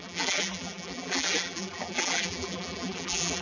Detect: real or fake fake